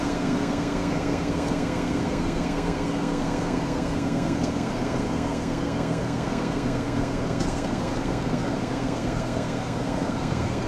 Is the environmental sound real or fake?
fake